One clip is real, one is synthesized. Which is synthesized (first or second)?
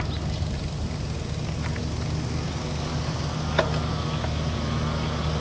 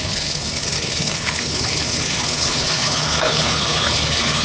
second